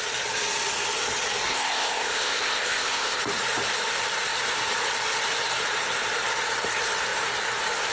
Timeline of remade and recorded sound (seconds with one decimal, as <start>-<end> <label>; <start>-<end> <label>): 0.0-1.5 recorded; 1.5-3.2 remade; 3.2-7.9 recorded